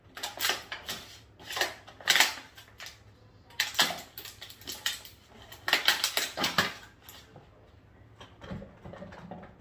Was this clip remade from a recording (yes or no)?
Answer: no